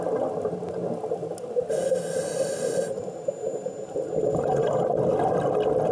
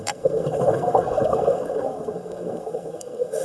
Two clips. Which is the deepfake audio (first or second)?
second